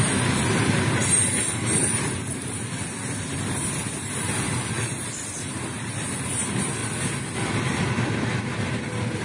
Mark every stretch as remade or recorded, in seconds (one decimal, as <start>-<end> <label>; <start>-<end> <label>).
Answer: 0.0-9.2 recorded